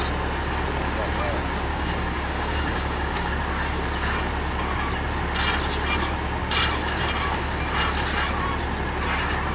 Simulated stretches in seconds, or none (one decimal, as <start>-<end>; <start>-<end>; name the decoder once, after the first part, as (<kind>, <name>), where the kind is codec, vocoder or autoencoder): 1.7-3.3 (codec, DAC)